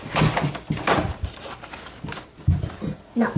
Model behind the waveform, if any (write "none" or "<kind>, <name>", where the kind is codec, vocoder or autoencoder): none